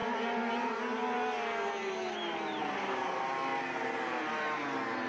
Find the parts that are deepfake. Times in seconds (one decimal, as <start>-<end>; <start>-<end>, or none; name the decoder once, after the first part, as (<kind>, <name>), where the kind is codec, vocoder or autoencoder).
none